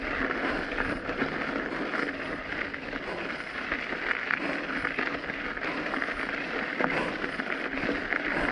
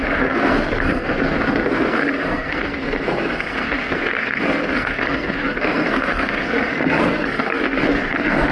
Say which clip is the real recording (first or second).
first